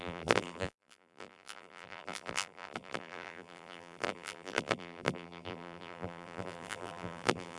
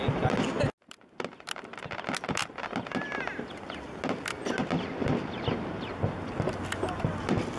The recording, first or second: second